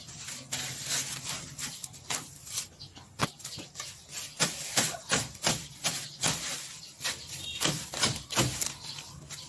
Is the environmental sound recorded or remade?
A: remade